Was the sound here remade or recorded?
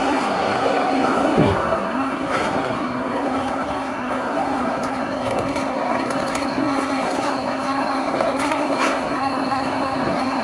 remade